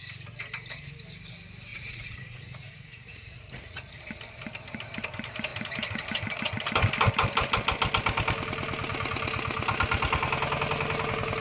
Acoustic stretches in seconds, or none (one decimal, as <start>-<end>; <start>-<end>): 0.0-1.7; 3.9-11.4